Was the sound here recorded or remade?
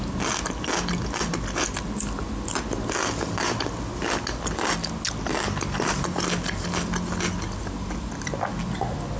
recorded